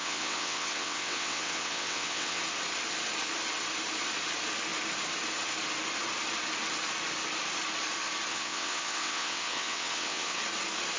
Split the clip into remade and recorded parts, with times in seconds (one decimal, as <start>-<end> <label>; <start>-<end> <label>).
0.0-2.4 remade; 2.4-8.3 recorded; 8.3-10.4 remade; 10.4-11.0 recorded